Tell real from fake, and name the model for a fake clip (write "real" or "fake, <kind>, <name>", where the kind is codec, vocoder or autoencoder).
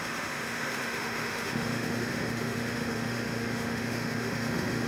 fake, autoencoder, DAC-VAE